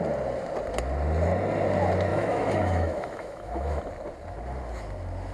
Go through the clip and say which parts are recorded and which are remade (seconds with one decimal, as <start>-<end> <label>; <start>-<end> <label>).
0.0-2.1 recorded; 2.1-3.8 remade; 3.8-5.3 recorded